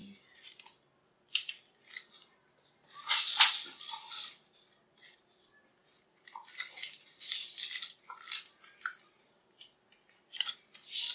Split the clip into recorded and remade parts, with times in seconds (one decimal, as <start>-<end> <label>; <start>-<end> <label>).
0.0-11.1 recorded